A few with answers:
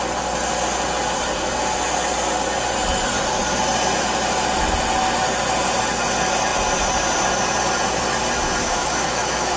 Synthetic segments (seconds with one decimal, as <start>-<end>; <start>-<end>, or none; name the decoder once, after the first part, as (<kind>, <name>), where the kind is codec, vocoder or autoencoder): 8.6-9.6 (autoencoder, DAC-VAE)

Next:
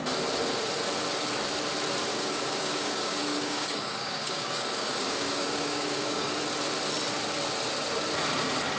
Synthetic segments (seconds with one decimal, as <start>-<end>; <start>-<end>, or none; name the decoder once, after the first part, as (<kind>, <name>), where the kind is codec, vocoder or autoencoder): 2.1-6.4 (codec, DAC)

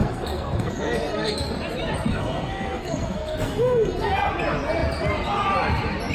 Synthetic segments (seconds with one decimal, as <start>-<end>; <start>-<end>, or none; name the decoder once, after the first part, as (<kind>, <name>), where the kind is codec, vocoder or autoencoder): 0.0-1.5 (codec, SNAC); 2.1-4.3

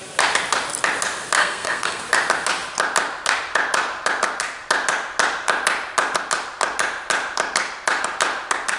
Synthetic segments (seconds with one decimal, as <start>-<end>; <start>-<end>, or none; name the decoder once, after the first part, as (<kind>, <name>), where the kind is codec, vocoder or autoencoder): 1.4-2.0 (codec, SNAC)

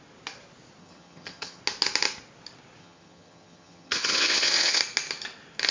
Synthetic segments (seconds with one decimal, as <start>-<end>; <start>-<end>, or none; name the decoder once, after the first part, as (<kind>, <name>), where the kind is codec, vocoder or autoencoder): 0.8-1.6 (vocoder, HiFi-GAN); 2.8-4.8